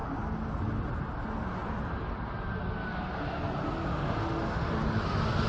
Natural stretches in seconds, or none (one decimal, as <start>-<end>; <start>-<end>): 0.0-3.9; 4.7-5.5